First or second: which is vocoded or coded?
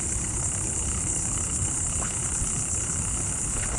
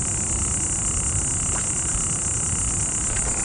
first